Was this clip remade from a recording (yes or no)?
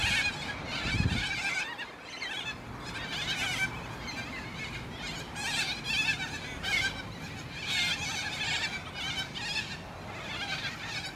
no